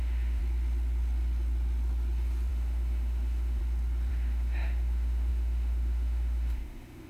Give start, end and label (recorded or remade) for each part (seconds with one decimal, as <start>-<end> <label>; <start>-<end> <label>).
0.0-0.4 remade; 0.4-2.5 recorded; 2.5-3.6 remade; 3.6-4.1 recorded; 4.1-7.1 remade